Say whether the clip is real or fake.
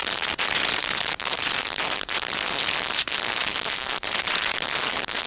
fake